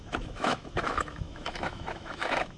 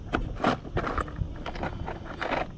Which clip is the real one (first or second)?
second